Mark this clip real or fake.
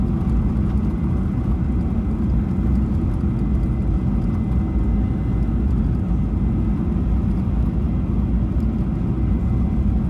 real